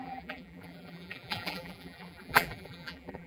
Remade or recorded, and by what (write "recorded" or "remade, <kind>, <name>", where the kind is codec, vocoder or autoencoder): remade, vocoder, BigVGAN v2